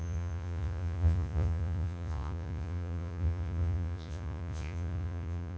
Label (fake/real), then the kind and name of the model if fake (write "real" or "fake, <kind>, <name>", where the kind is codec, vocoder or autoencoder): fake, vocoder, Vocos